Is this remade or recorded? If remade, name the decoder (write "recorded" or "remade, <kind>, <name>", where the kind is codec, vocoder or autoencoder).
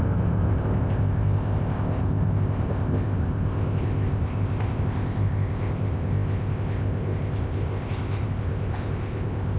remade, codec, ZipCodec